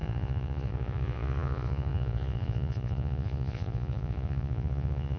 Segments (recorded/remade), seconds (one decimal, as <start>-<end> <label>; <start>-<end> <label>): 0.0-5.2 remade